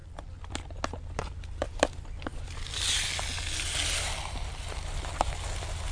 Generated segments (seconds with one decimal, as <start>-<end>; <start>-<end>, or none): none